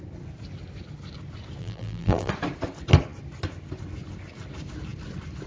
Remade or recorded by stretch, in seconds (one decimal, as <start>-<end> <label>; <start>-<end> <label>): 0.0-1.6 recorded; 1.6-2.3 remade; 2.3-5.5 recorded